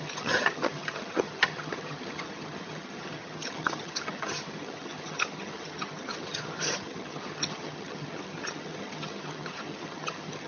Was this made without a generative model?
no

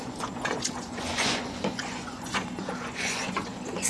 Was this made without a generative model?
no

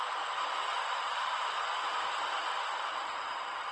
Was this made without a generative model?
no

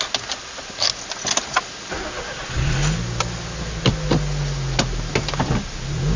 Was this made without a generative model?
yes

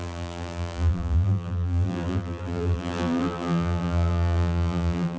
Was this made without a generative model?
no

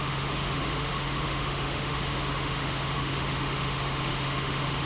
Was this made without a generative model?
no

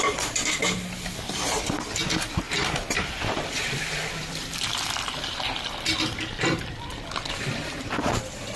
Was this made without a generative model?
no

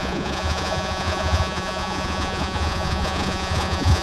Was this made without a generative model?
no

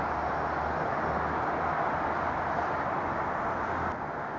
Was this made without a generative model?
yes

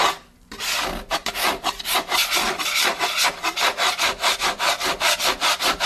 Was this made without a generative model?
yes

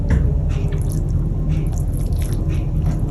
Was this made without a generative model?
yes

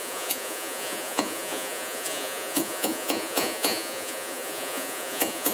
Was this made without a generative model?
no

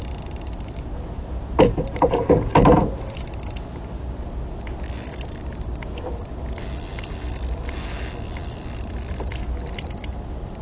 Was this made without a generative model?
yes